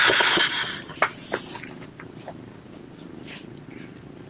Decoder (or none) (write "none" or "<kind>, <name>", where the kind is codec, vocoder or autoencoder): none